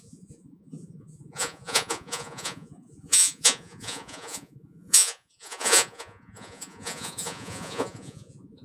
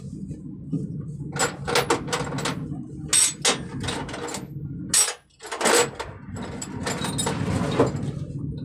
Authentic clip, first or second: second